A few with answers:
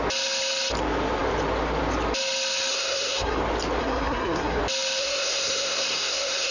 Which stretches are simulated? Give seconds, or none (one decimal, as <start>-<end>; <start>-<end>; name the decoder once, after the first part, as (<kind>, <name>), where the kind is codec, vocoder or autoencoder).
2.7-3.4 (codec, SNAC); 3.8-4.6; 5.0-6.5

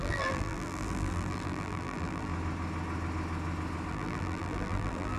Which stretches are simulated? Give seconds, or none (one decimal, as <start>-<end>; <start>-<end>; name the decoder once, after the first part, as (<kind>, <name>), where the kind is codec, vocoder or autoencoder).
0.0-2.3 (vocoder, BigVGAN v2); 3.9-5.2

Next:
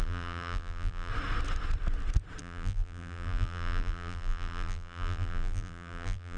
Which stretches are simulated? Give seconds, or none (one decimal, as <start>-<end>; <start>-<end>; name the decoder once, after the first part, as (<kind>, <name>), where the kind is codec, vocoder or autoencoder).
0.0-1.1 (vocoder, BigVGAN v2); 2.4-6.4